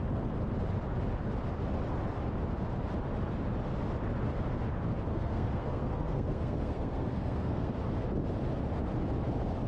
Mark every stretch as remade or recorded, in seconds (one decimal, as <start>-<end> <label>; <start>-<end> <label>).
0.0-5.1 recorded; 5.1-7.7 remade; 7.7-9.7 recorded